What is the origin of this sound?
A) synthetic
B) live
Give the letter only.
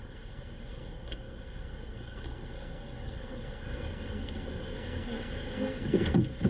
A